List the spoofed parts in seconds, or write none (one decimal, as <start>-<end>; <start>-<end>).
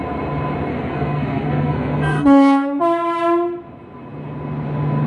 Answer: 0.7-2.8